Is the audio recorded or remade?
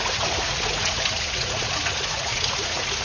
remade